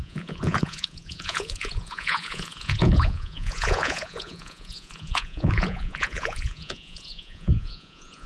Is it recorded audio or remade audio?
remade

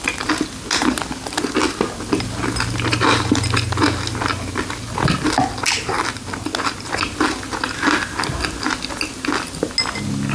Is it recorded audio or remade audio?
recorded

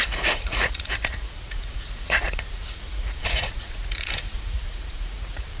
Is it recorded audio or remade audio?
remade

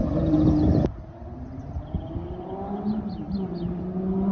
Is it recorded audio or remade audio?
recorded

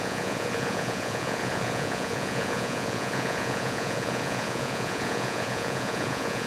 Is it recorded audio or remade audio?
remade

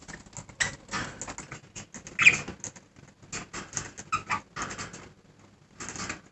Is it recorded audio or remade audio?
recorded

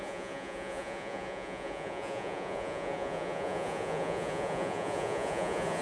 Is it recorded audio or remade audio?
remade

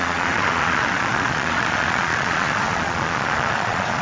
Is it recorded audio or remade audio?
remade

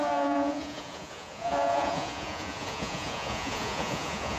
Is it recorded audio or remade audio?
remade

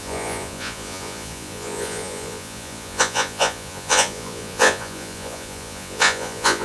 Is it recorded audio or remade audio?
remade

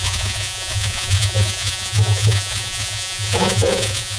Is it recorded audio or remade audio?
remade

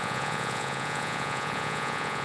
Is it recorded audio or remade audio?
remade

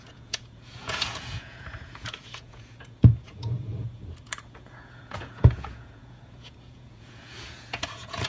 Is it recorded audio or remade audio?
remade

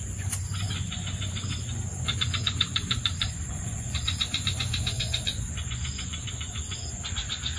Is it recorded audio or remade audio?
remade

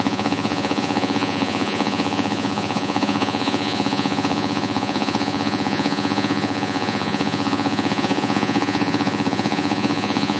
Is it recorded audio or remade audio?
remade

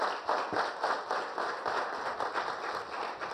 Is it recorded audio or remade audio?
recorded